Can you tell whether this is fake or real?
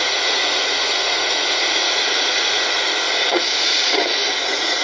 fake